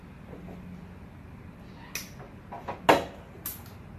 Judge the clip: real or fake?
real